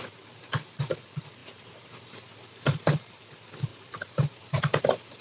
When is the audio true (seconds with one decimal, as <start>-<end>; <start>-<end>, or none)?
0.0-1.4; 2.2-2.7; 3.3-3.7; 4.8-5.2